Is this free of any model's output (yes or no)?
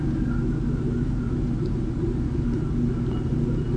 yes